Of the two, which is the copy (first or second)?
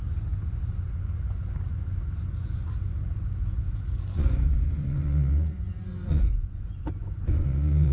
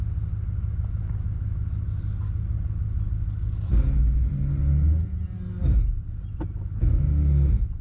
first